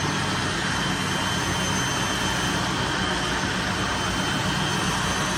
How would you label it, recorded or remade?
recorded